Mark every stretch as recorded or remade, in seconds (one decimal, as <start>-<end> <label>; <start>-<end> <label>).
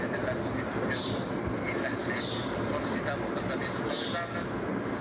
0.0-5.0 recorded